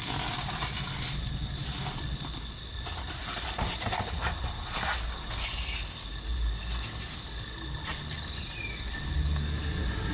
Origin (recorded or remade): recorded